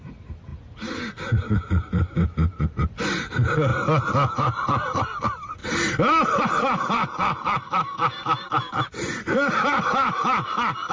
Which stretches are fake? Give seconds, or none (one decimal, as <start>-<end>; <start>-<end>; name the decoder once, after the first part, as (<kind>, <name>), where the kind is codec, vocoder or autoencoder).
0.0-3.7 (vocoder, BigVGAN v2); 4.3-5.6; 6.4-8.0; 8.7-10.9